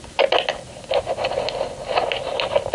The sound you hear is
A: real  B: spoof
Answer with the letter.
A